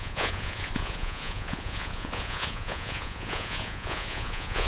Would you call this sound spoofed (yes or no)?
yes